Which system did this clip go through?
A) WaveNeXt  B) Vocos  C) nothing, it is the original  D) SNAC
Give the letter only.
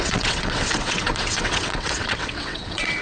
A